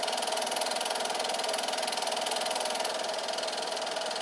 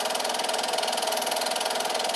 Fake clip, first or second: first